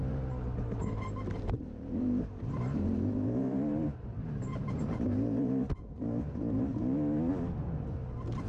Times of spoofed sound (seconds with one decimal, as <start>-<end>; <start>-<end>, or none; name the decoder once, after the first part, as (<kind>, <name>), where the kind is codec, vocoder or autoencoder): 0.8-5.8 (vocoder, BigVGAN v2)